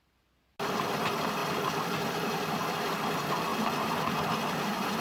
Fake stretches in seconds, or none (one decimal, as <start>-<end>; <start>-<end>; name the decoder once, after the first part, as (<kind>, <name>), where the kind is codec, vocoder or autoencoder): 1.4-2.1 (vocoder, BigVGAN v2)